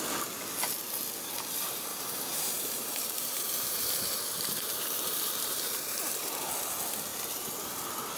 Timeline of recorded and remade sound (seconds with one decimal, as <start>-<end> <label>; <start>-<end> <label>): 0.0-1.9 recorded; 1.9-6.5 remade; 6.5-8.2 recorded